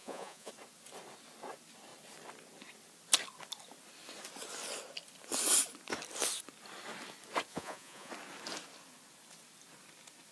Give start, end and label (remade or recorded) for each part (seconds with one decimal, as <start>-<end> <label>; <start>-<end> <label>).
0.0-0.5 remade; 0.5-7.5 recorded; 7.5-8.1 remade; 8.1-10.3 recorded

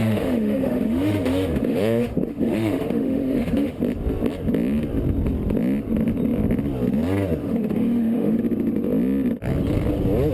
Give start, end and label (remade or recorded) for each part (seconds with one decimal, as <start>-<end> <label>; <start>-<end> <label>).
0.0-3.8 remade; 3.8-7.4 recorded; 7.4-8.4 remade; 8.4-10.3 recorded

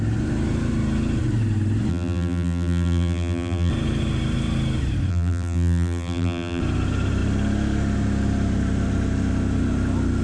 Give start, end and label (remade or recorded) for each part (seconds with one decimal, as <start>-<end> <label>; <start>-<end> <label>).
0.0-1.9 recorded; 1.9-3.7 remade; 3.7-5.1 recorded; 5.1-6.6 remade; 6.6-10.2 recorded

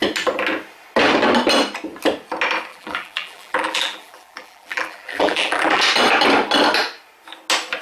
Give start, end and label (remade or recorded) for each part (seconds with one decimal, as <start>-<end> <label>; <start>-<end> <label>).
0.0-2.7 recorded; 2.7-5.8 remade; 5.8-7.8 recorded